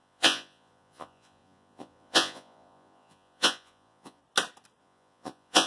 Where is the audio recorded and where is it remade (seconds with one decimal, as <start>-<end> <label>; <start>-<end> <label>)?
0.0-4.2 remade; 4.2-4.8 recorded; 4.8-5.7 remade